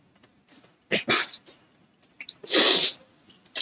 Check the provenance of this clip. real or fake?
real